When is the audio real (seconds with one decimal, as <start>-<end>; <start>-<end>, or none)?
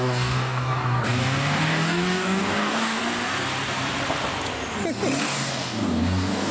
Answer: 3.0-5.2